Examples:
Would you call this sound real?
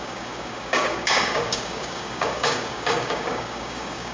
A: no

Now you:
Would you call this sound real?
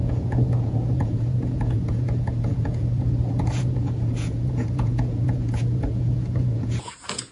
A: no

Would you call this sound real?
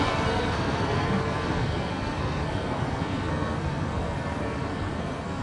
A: no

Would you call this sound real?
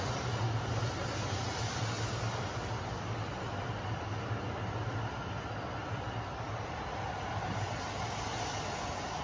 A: yes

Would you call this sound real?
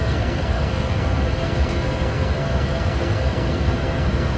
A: no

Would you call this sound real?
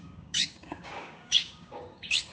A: no